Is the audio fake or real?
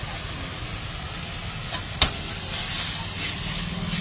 real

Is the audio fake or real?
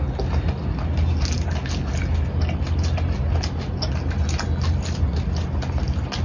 real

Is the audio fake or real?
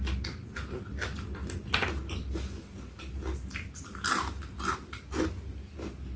real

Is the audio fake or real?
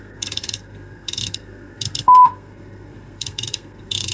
fake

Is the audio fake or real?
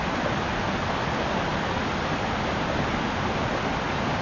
real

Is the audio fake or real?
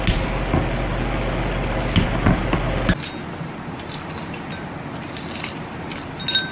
real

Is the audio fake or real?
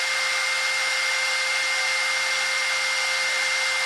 real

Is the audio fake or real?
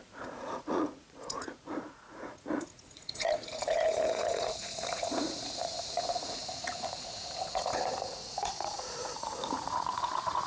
fake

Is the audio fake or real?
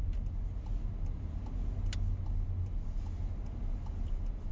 real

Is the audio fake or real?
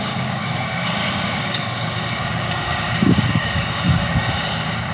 fake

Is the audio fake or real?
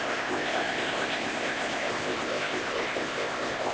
fake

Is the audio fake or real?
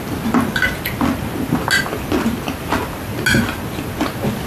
real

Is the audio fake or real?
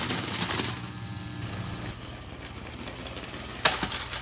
real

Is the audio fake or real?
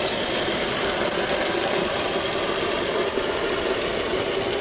fake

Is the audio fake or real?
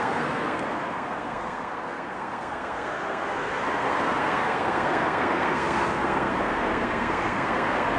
fake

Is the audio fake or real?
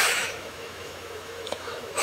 fake